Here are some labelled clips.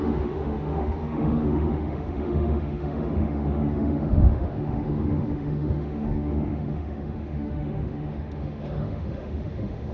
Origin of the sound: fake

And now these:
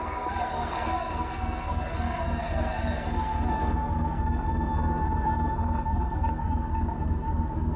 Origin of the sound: fake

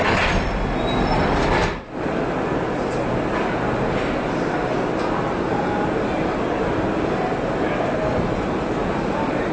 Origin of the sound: real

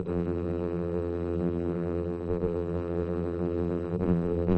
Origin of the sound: fake